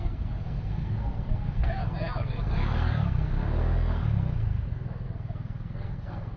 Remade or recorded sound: remade